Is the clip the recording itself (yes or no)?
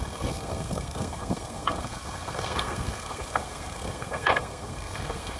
no